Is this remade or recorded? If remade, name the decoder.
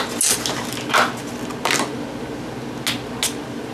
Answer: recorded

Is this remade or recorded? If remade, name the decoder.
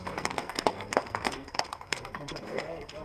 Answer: remade, codec, SNAC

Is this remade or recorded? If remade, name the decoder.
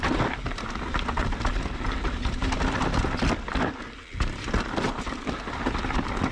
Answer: recorded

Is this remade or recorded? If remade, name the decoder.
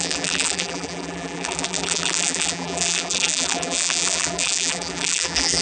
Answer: remade, vocoder, BigVGAN v2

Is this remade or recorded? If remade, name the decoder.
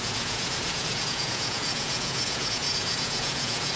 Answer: remade, vocoder, Vocos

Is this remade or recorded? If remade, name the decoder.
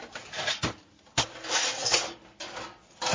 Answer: recorded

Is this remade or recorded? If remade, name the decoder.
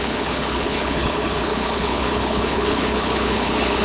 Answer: remade, codec, HILCodec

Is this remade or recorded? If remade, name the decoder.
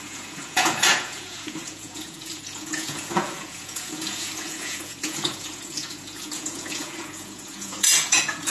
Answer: remade, vocoder, Vocos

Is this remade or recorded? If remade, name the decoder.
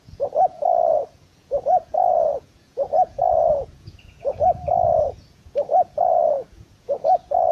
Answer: remade, vocoder, Vocos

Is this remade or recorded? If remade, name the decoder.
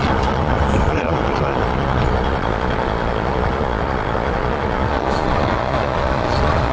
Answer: remade, vocoder, Vocos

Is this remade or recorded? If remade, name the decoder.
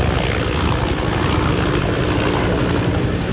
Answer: recorded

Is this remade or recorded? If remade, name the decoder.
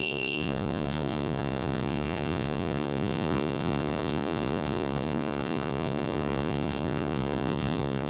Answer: remade, vocoder, Vocos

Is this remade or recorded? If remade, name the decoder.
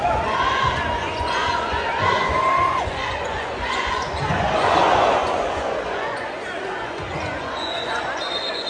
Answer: remade, vocoder, Vocos